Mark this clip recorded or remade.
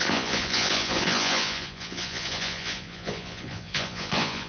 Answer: remade